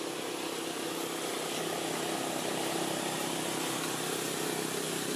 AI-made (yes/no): no